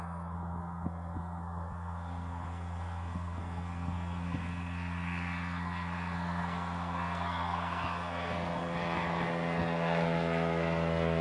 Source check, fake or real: fake